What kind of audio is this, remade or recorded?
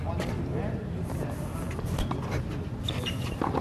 recorded